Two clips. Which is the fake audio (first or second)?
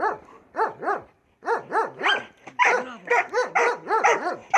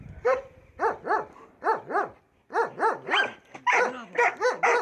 first